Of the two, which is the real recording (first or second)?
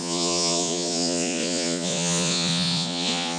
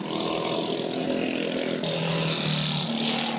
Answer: second